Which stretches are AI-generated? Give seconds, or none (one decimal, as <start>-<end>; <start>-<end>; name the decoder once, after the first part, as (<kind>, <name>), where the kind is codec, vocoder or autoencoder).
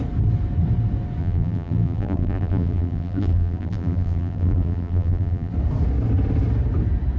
1.2-5.5 (vocoder, BigVGAN v2)